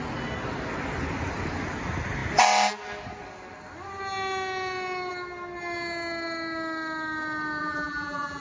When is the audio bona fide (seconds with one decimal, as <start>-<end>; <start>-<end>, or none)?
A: 0.0-7.6